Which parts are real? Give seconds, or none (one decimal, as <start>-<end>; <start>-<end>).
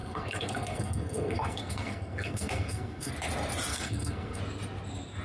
3.1-3.7; 4.4-5.2